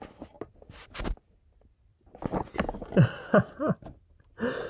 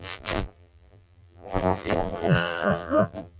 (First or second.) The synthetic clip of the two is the second